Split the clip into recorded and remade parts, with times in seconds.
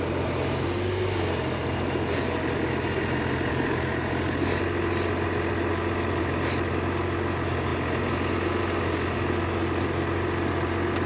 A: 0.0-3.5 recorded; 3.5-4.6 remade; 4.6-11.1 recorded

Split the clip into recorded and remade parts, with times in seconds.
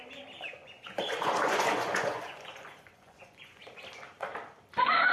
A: 0.0-0.5 recorded; 0.5-3.6 remade; 3.6-5.1 recorded